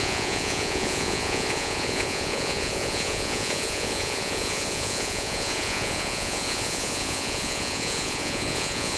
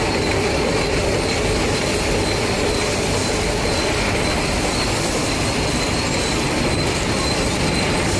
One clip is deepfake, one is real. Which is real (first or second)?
second